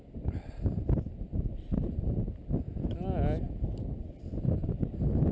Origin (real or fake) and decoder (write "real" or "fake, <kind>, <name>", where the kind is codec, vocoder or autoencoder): real